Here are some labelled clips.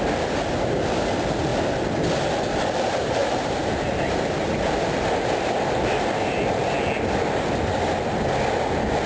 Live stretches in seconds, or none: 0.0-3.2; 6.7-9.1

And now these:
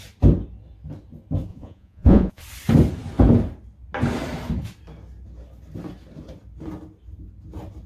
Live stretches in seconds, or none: 0.0-1.5; 2.4-7.9

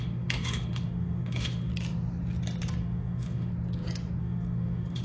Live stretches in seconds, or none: 1.7-2.8; 3.5-4.2

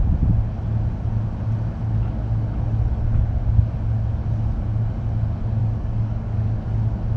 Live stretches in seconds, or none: 0.0-5.6; 6.6-7.2

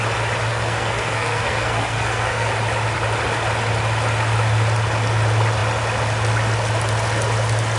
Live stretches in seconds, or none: 0.0-0.5; 2.5-7.8